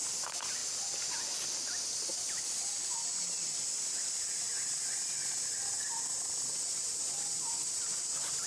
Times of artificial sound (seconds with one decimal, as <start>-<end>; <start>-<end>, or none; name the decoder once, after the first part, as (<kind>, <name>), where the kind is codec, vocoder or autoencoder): none